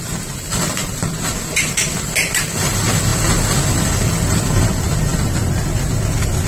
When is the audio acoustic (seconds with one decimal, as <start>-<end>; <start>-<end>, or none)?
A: 0.0-6.5